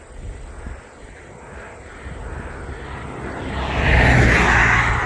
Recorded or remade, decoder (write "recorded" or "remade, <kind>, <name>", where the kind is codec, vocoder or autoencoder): recorded